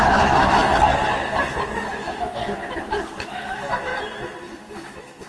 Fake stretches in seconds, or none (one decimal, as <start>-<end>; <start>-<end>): 0.0-0.6; 1.9-2.4; 3.2-3.9; 4.5-5.3